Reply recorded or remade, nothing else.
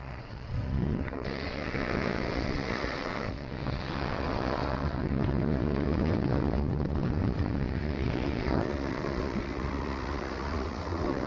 remade